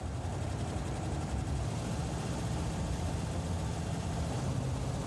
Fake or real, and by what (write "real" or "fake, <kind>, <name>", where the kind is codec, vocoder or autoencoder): real